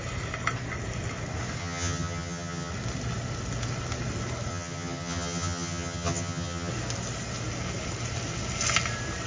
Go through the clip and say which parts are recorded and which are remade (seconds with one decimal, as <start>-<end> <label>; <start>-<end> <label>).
0.0-1.6 recorded; 1.6-2.7 remade; 2.7-4.5 recorded; 4.5-6.7 remade; 6.7-9.3 recorded